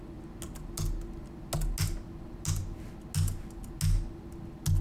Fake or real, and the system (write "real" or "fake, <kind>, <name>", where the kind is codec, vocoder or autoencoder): real